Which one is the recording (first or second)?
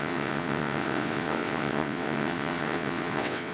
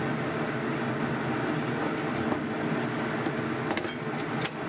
second